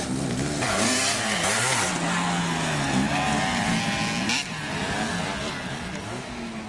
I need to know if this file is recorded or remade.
recorded